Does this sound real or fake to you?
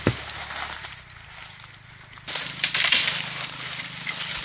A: real